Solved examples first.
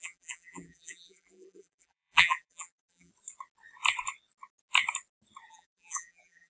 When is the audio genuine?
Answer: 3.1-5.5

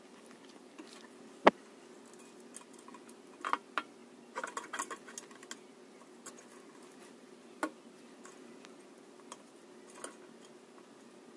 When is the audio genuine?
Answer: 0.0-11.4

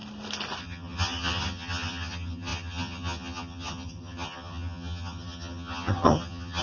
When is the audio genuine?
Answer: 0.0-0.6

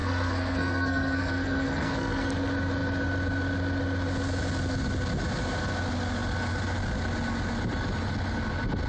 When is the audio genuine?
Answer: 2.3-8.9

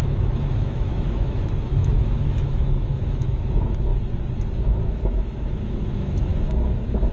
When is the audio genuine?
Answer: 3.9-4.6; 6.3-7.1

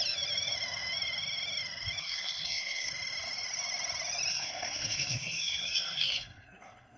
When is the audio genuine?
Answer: 0.0-2.0; 2.9-4.3